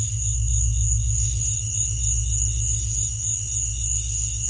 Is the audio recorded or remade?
recorded